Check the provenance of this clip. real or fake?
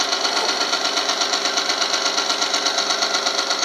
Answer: real